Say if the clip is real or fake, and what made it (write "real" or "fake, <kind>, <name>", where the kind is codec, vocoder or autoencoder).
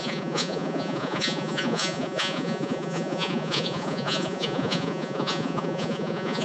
fake, vocoder, Vocos